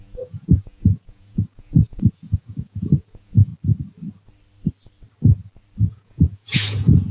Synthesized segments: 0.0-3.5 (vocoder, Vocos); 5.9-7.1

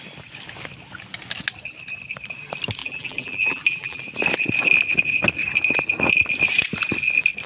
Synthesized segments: 2.8-4.0 (vocoder, BigVGAN v2)

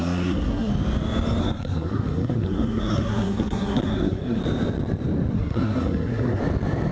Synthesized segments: 0.0-0.7 (codec, SNAC); 1.4-4.4; 5.3-6.4

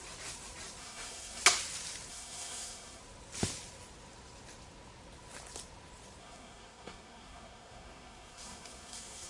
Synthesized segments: 0.8-1.4 (codec, SNAC); 2.1-3.0; 6.2-9.3

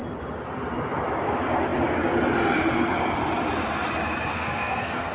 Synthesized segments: 4.3-5.1 (codec, SNAC)